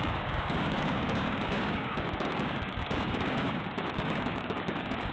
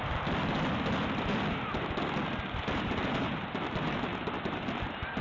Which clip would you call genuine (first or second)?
second